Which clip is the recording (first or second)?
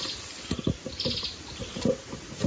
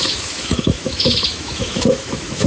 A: first